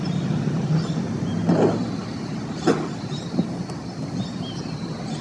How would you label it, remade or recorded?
recorded